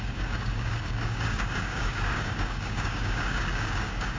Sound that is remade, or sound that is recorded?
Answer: remade